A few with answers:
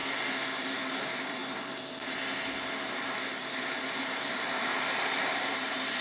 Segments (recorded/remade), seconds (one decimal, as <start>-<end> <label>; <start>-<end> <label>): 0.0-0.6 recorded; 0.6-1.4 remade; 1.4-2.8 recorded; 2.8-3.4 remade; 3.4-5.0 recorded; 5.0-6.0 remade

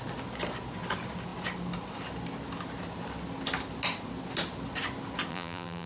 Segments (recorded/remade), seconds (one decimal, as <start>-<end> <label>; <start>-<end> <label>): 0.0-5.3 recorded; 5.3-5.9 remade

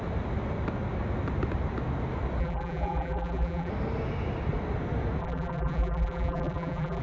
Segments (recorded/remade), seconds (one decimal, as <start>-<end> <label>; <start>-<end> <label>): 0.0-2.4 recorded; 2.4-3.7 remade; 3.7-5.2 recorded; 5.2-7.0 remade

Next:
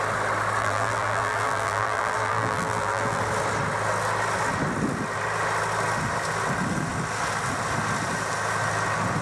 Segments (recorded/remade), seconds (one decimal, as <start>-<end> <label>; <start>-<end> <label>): 0.0-0.6 recorded; 0.6-3.2 remade; 3.2-9.2 recorded